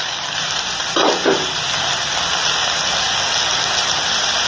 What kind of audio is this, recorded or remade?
recorded